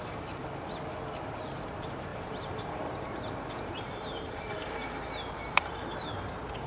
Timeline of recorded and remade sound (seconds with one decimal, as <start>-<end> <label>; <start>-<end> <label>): 0.0-0.4 remade; 0.4-1.7 recorded; 1.7-4.8 remade; 4.8-5.6 recorded; 5.6-6.7 remade